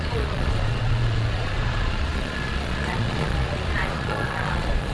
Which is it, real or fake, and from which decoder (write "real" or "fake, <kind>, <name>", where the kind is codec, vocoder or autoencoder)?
fake, vocoder, Vocos